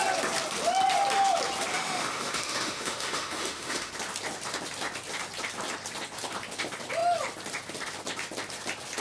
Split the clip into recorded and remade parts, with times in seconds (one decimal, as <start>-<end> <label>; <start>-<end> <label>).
0.0-1.7 recorded; 1.7-3.9 remade; 3.9-9.0 recorded